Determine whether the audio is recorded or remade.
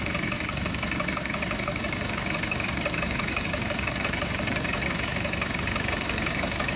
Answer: remade